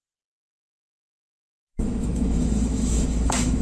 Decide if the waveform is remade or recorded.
remade